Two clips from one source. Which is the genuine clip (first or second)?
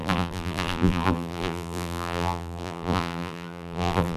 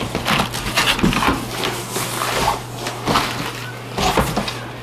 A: second